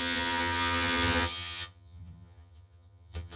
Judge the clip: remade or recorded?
remade